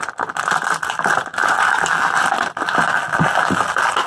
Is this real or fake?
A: real